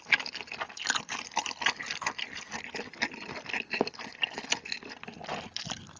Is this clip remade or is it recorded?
recorded